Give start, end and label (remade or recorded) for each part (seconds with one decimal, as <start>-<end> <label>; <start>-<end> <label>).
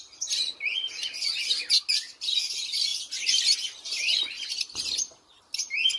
0.0-6.0 recorded